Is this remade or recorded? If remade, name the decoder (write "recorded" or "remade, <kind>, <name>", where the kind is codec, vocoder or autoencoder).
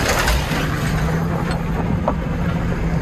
recorded